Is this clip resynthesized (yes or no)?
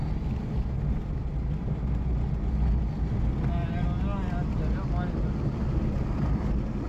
no